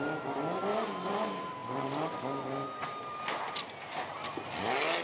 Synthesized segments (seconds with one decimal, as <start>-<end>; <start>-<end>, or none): none